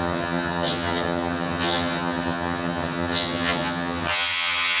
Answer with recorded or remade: remade